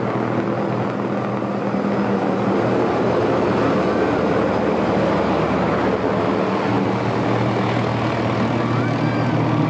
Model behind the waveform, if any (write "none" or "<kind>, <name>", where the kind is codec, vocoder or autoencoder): none